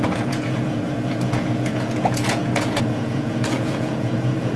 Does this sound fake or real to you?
fake